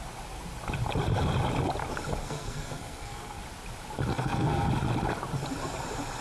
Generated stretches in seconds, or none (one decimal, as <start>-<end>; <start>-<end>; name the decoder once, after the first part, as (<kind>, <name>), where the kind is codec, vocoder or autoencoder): 2.2-3.4 (codec, SNAC); 4.1-4.7